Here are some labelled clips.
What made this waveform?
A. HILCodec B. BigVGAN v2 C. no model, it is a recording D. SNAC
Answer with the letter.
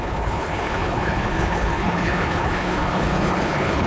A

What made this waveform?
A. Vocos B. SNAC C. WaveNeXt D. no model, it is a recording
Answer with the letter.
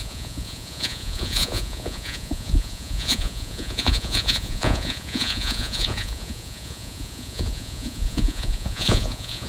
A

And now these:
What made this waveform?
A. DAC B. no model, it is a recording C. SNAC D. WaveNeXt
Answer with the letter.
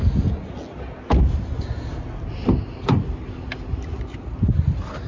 B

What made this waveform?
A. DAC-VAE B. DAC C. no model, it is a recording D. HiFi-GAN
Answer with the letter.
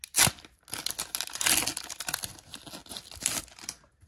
C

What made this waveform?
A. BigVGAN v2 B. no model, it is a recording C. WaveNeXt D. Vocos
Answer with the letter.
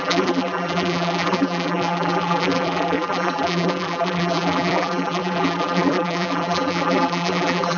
A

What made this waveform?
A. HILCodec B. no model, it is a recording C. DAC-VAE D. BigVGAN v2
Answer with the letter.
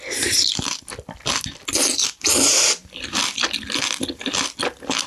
B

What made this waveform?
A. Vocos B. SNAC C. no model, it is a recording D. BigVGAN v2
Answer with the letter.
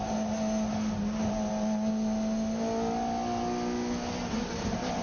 C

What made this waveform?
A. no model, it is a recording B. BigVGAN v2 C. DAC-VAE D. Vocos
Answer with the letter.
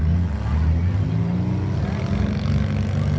A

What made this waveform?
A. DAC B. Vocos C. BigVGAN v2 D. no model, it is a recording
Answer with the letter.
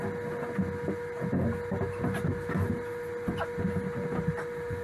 D